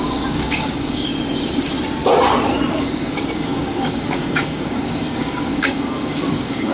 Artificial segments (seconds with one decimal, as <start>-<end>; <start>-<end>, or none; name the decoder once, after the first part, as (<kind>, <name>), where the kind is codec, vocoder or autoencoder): 0.0-1.1 (codec, DAC); 2.7-6.7